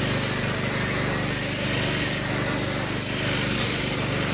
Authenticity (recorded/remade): recorded